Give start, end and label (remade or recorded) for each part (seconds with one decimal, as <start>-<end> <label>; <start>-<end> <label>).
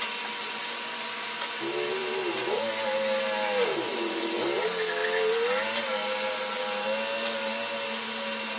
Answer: 0.0-8.6 recorded